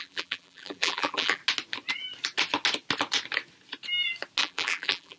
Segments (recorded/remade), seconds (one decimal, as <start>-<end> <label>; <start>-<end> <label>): 0.0-1.4 remade; 1.4-4.4 recorded; 4.4-5.2 remade

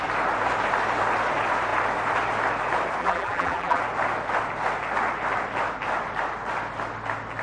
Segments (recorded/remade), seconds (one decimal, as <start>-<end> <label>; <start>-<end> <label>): 0.0-3.0 recorded; 3.0-3.8 remade; 3.8-7.4 recorded

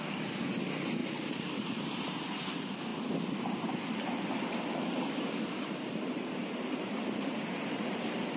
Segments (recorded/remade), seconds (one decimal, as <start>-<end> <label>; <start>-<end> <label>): 0.0-1.0 recorded; 1.0-2.2 remade; 2.2-8.4 recorded

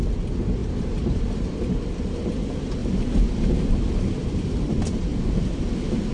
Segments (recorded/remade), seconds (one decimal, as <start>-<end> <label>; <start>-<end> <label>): 0.0-0.6 recorded; 0.6-1.5 remade; 1.5-2.8 recorded; 2.8-4.5 remade; 4.5-6.1 recorded

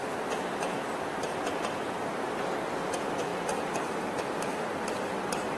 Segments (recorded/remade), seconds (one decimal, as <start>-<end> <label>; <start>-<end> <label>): 0.0-3.3 recorded; 3.3-4.1 remade; 4.1-5.6 recorded

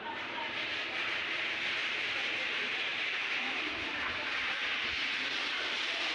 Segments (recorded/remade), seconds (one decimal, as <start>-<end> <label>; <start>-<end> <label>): 0.0-6.1 remade